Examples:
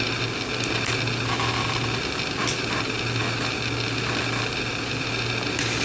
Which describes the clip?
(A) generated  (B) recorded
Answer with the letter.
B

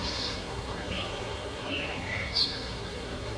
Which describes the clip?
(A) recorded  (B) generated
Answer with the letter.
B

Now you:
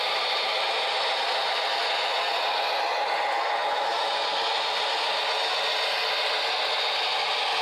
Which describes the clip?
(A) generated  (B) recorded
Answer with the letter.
B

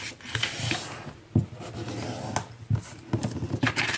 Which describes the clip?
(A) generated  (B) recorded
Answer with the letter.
B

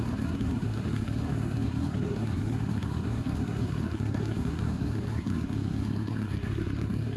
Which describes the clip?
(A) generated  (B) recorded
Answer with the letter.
A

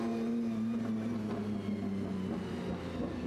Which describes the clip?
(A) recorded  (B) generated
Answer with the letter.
A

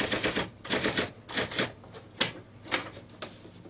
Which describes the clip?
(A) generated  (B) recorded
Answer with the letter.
B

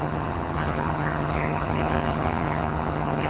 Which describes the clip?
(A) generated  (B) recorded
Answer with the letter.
A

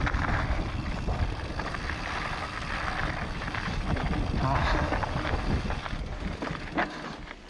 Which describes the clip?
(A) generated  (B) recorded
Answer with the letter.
B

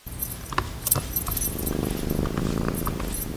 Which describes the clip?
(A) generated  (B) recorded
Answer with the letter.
B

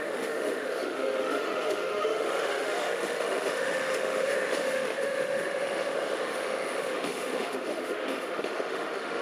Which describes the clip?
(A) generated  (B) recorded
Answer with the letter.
A